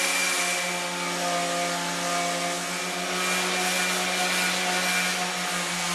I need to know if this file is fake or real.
real